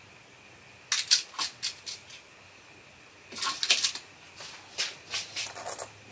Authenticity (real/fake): real